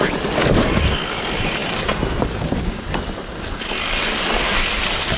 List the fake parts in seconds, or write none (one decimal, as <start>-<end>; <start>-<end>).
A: none